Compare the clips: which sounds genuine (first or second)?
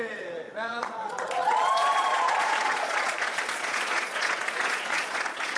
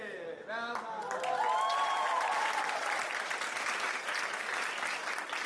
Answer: second